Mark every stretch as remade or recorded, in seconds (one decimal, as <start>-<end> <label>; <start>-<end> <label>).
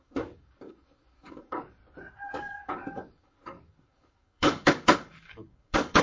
0.0-1.8 remade; 1.8-2.4 recorded; 2.4-6.0 remade